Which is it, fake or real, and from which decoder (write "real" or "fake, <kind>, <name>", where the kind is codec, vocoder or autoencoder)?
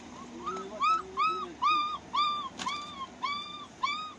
real